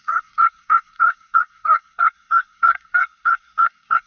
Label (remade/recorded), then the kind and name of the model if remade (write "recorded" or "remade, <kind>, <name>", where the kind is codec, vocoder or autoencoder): remade, codec, SNAC